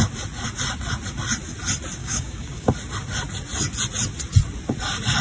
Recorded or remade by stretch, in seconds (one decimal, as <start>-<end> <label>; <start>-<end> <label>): 0.0-2.0 recorded; 2.0-2.7 remade; 2.7-5.2 recorded